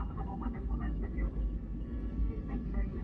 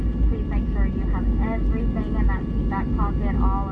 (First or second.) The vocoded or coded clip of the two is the first